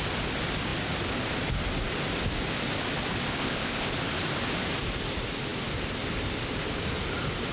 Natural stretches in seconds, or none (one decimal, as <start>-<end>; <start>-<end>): 0.0-3.4; 3.9-7.5